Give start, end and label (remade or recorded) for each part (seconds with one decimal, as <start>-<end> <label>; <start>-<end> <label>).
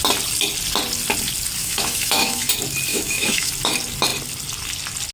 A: 0.0-1.6 recorded; 1.6-2.5 remade; 2.5-2.9 recorded; 2.9-3.5 remade; 3.5-5.1 recorded